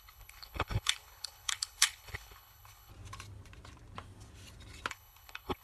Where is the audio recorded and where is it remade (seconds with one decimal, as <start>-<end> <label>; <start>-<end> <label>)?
0.0-2.9 remade; 2.9-4.9 recorded; 4.9-5.6 remade